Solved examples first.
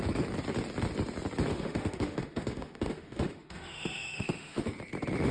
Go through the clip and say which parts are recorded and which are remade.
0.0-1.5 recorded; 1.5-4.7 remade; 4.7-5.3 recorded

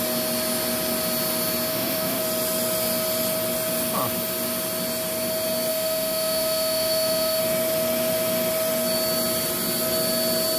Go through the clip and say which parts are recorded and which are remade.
0.0-1.7 recorded; 1.7-2.2 remade; 2.2-5.7 recorded; 5.7-7.4 remade; 7.4-10.6 recorded

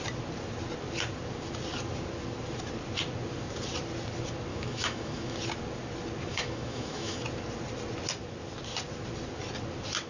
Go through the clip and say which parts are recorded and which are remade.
0.0-4.5 recorded; 4.5-5.4 remade; 5.4-6.3 recorded; 6.3-7.2 remade; 7.2-10.1 recorded

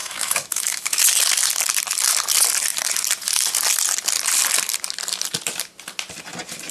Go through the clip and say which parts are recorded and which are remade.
0.0-1.0 remade; 1.0-6.7 recorded

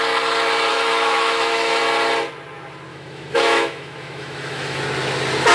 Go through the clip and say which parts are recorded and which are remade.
0.0-0.7 recorded; 0.7-1.8 remade; 1.8-2.9 recorded; 2.9-4.8 remade; 4.8-5.5 recorded

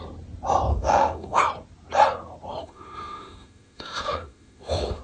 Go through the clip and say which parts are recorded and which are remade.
0.0-0.7 recorded; 0.7-1.4 remade; 1.4-2.6 recorded; 2.6-5.0 remade

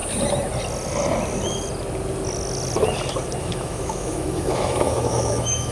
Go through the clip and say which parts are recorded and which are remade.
0.0-3.4 recorded; 3.4-5.7 remade

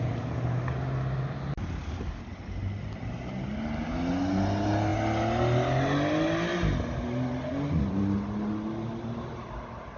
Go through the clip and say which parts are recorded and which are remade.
0.0-10.0 recorded